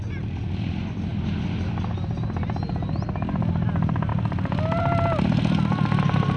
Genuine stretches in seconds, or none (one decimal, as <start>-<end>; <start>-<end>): 0.0-6.4